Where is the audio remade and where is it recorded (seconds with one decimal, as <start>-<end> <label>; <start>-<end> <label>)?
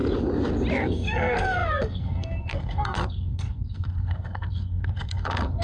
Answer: 0.0-0.8 recorded; 0.8-5.6 remade